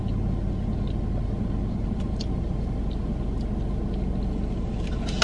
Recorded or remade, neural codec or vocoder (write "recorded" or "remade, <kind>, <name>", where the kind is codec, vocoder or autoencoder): recorded